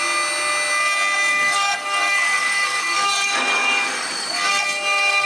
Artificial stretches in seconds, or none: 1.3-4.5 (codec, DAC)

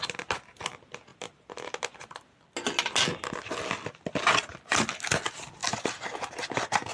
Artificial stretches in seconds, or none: none

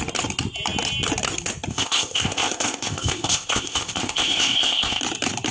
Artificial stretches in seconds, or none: 1.7-5.0 (codec, ZipCodec)

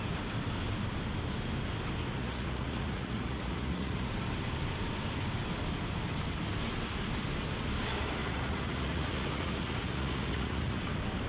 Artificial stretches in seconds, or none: 2.2-4.1 (vocoder, Vocos); 8.2-10.8

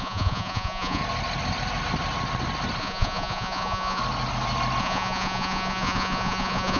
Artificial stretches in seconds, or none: 0.0-1.0 (vocoder, Vocos); 2.8-4.0; 4.8-6.8